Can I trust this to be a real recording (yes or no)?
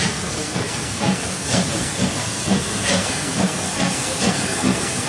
no